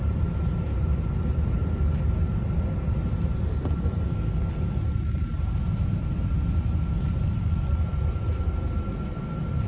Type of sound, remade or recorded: recorded